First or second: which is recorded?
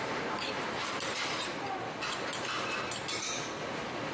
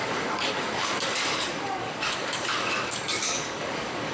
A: first